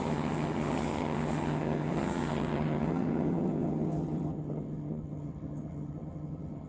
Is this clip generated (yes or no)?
yes